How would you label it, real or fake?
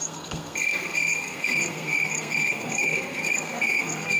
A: fake